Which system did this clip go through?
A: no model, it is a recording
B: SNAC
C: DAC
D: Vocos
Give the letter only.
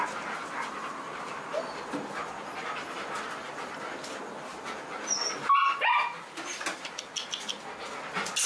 A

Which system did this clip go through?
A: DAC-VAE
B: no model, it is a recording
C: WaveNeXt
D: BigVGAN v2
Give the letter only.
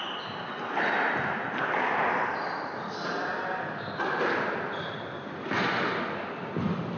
B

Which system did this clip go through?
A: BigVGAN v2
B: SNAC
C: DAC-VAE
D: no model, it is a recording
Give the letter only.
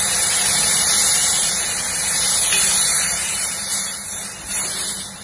A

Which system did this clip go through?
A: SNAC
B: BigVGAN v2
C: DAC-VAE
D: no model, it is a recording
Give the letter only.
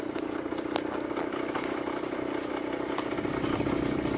D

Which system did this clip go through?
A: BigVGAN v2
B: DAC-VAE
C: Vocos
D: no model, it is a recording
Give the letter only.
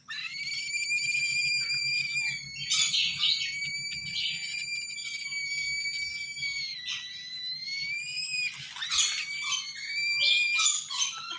D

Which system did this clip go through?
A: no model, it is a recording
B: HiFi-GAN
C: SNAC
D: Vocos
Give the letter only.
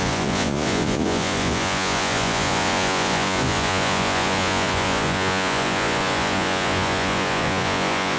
D